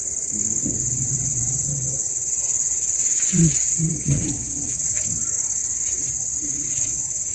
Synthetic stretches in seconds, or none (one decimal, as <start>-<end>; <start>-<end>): 0.6-5.0; 5.6-7.3